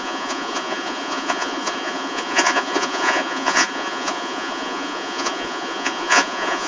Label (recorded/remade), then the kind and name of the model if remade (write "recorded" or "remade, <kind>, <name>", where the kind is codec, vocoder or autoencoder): remade, vocoder, Vocos